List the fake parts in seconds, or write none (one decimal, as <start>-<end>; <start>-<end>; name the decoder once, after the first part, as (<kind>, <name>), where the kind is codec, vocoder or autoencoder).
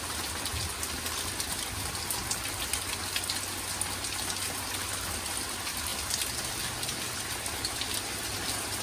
none